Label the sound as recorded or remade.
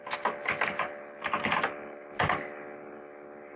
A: recorded